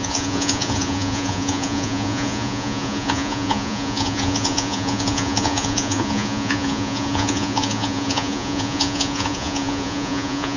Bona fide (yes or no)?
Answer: no